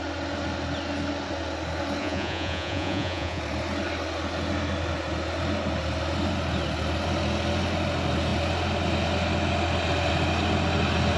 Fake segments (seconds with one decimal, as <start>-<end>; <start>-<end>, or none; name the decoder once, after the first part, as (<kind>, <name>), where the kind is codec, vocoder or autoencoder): 2.0-3.4 (vocoder, Vocos)